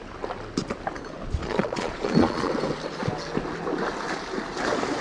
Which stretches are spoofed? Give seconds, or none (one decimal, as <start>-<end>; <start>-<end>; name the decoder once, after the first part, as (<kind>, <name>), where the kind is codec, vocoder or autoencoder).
1.4-2.5 (vocoder, Vocos)